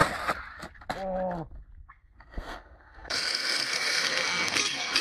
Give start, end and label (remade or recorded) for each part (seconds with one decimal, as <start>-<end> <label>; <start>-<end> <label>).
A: 0.0-1.9 recorded; 1.9-5.0 remade